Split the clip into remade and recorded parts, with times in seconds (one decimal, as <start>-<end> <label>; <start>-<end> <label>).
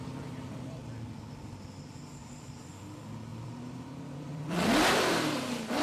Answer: 0.0-0.8 remade; 0.8-2.4 recorded; 2.4-5.8 remade